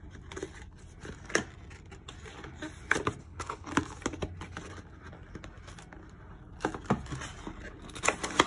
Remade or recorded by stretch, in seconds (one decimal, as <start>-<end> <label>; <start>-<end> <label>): 0.0-3.2 recorded; 3.2-3.7 remade; 3.7-8.5 recorded